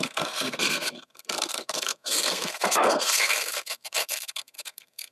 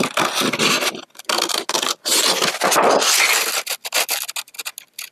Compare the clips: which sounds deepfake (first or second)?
first